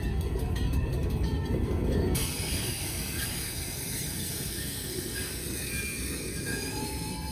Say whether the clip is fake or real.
fake